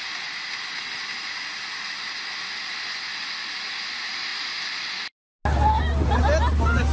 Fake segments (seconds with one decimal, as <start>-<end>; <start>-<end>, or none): none